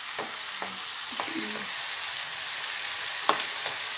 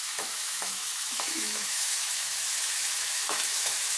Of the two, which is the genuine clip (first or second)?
first